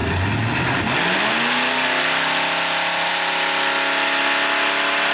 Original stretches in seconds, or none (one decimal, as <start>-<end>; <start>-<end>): 0.0-5.1